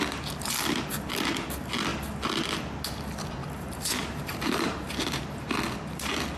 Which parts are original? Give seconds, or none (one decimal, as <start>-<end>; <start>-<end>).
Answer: 0.0-3.4; 5.5-6.4